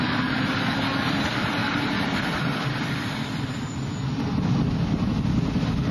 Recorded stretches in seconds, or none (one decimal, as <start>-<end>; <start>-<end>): 0.0-5.9